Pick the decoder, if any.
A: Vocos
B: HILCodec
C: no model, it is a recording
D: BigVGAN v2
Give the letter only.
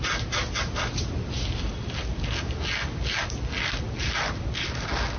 C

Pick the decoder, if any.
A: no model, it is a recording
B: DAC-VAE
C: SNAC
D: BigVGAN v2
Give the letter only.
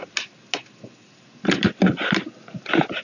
A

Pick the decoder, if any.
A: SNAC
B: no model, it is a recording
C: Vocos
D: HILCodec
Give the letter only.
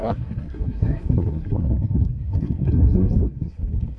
A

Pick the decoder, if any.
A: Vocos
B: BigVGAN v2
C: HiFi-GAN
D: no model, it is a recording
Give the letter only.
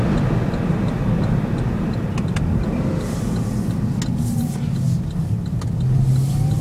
D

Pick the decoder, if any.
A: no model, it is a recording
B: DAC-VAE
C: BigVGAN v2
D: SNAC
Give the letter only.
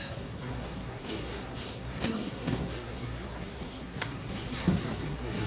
D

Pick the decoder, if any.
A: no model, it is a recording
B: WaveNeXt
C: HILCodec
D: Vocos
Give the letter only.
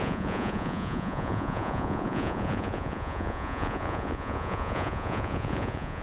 D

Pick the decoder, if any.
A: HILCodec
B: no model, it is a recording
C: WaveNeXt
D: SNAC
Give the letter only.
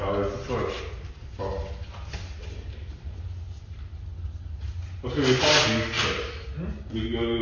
B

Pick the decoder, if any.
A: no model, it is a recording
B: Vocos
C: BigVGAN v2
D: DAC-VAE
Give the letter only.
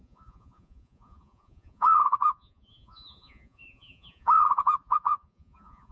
B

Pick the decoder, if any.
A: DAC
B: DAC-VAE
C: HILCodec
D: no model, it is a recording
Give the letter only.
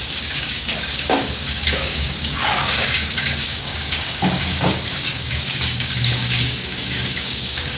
A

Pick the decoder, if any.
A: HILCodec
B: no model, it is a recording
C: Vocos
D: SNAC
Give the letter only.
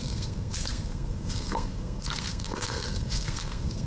D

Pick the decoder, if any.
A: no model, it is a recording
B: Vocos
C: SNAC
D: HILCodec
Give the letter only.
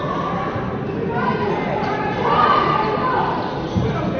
A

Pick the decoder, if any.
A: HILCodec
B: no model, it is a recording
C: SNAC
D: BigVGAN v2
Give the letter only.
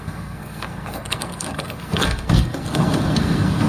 C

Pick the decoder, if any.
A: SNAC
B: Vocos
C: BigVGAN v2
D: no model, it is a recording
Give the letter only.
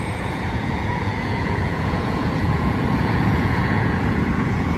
B